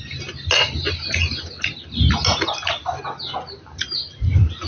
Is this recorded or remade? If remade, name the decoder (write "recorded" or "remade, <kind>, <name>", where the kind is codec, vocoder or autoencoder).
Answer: recorded